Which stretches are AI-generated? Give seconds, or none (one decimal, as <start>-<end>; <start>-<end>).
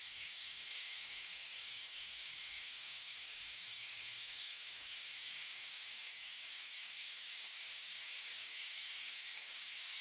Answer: 0.0-10.0